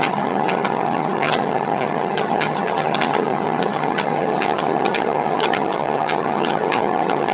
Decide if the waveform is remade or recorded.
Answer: remade